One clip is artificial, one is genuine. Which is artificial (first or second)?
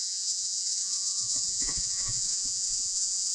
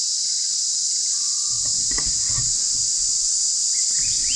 first